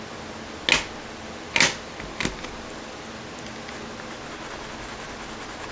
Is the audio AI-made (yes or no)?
no